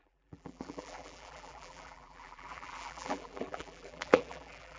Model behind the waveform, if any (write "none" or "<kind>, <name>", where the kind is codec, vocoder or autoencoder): vocoder, BigVGAN v2